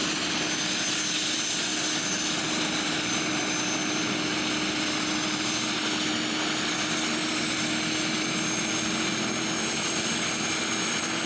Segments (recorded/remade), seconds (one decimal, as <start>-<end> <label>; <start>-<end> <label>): 0.0-11.3 recorded

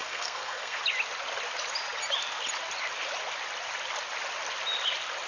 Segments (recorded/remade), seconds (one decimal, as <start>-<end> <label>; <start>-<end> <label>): 0.0-0.8 remade; 0.8-5.3 recorded

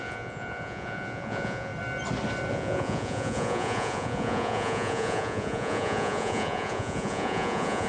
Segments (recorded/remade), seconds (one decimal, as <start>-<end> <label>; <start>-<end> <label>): 0.0-1.7 remade; 1.7-2.5 recorded; 2.5-7.9 remade

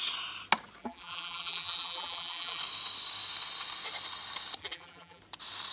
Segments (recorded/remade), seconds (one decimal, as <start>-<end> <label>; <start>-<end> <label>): 0.0-0.8 recorded; 0.8-2.6 remade; 2.6-4.6 recorded; 4.6-5.2 remade; 5.2-5.7 recorded

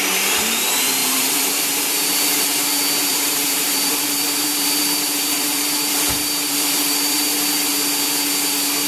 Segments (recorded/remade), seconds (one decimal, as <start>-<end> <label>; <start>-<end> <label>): 0.0-1.0 recorded; 1.0-1.6 remade; 1.6-3.1 recorded; 3.1-7.7 remade; 7.7-8.9 recorded